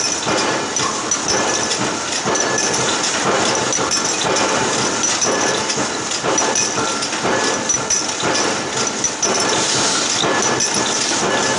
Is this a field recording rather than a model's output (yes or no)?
yes